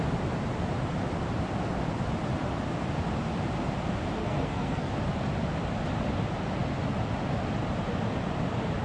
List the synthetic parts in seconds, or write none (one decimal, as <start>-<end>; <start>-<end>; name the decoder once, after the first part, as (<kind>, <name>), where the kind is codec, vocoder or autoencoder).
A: 4.2-4.9 (codec, SNAC)